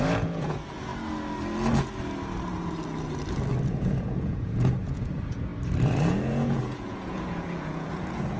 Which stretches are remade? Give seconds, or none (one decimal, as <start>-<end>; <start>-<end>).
0.0-0.9; 3.8-5.5; 6.1-8.4